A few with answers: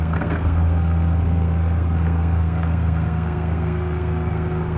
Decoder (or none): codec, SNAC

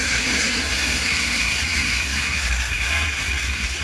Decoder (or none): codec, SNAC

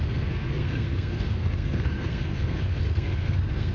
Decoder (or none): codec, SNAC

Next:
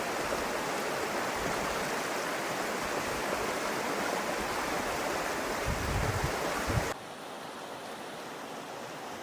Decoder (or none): none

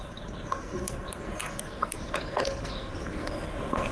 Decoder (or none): codec, SNAC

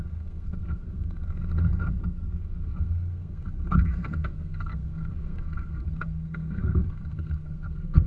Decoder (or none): codec, SNAC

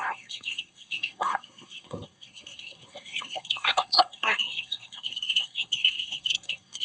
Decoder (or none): codec, SNAC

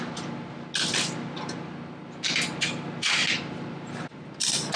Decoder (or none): none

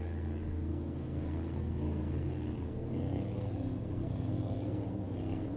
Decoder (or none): codec, SNAC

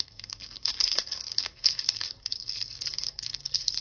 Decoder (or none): codec, SNAC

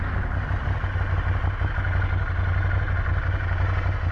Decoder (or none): none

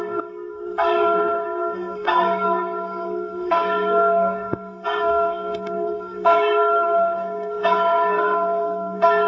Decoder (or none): codec, SNAC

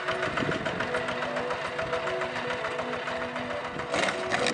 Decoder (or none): none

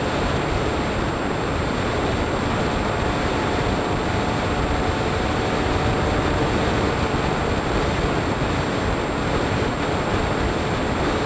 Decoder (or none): none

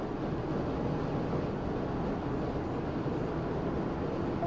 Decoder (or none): none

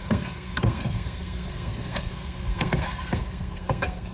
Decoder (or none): codec, SNAC